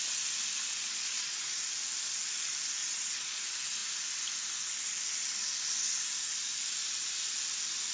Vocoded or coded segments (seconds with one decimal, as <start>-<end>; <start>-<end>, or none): 0.8-1.6; 2.8-3.4